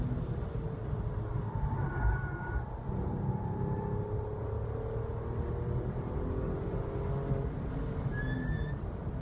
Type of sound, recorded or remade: recorded